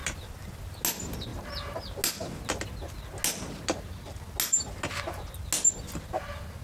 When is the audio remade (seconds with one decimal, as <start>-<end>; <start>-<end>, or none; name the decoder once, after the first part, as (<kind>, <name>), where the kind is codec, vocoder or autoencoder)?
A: 0.0-0.7 (vocoder, BigVGAN v2)